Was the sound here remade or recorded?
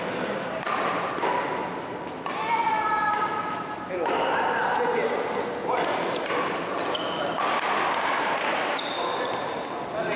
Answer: recorded